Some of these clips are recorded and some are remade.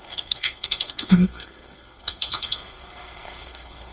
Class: remade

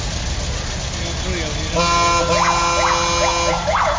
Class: recorded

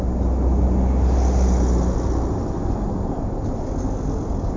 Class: recorded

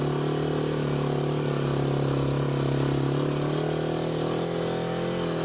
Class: recorded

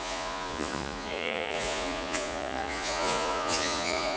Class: remade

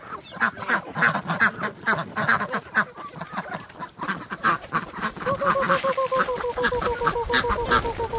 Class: recorded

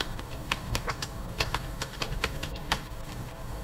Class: remade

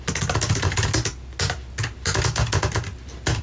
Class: recorded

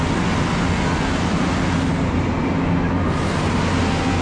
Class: recorded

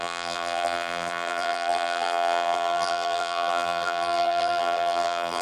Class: remade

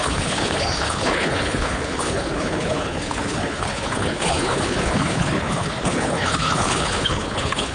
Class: remade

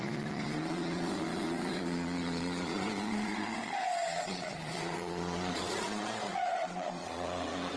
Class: remade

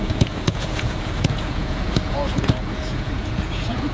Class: remade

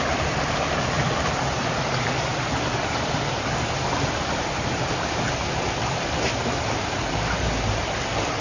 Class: recorded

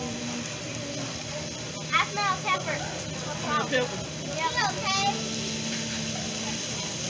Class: recorded